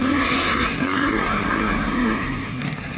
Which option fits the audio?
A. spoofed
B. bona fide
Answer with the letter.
A